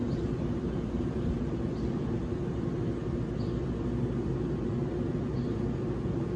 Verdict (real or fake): real